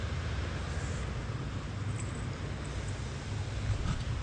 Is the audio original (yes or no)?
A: yes